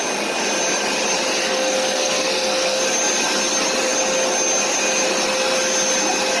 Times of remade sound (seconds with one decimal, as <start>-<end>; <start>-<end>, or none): 1.4-2.8

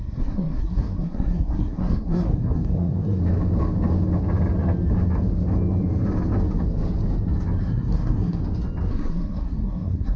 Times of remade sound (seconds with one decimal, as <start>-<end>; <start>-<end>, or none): 0.0-3.2; 7.6-8.4; 8.9-10.2